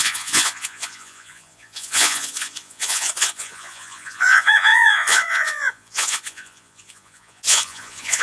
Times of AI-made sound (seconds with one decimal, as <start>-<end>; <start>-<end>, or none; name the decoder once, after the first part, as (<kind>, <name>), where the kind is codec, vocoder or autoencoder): 0.0-8.2 (vocoder, Vocos)